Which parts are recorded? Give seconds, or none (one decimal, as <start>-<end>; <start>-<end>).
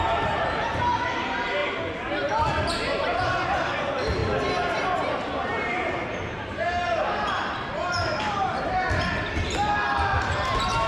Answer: 0.0-10.9